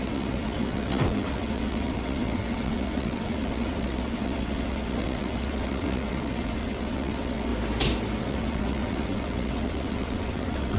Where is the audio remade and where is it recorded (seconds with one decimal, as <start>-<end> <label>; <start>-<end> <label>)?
0.0-7.5 remade; 7.5-8.2 recorded; 8.2-10.8 remade